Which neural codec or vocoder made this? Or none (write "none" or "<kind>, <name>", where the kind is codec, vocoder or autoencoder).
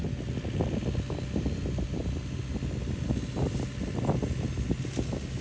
none